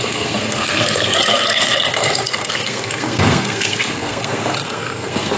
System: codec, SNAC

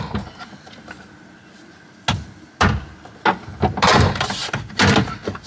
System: none